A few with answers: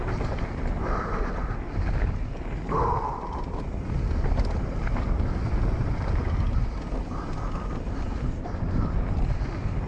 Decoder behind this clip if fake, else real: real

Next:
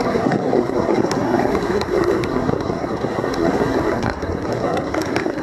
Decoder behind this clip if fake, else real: fake, codec, SNAC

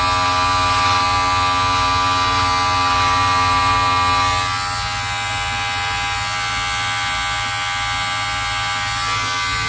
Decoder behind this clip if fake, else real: real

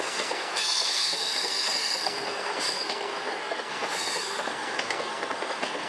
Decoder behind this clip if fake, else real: fake, codec, SNAC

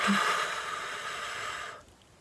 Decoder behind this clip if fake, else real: real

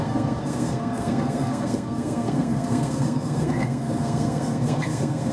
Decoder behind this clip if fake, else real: fake, codec, SNAC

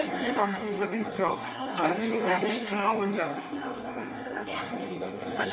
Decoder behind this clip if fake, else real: fake, codec, SNAC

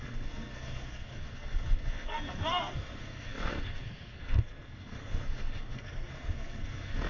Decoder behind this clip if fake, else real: fake, codec, SNAC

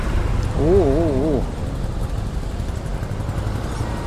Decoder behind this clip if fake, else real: real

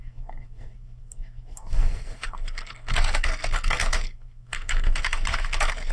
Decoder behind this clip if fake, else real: fake, codec, SNAC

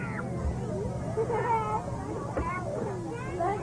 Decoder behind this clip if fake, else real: real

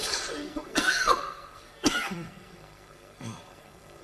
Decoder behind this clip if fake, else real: fake, codec, SNAC